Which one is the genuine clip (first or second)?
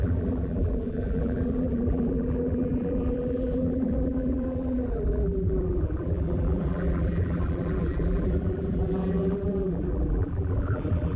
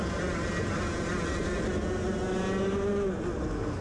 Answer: second